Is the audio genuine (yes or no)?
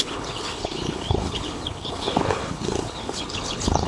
no